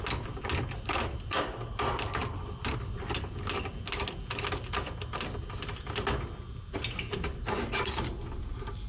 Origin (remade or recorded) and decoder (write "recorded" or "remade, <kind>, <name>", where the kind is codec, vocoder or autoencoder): recorded